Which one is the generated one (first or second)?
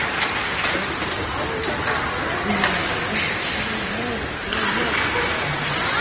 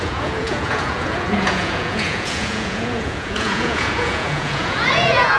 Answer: second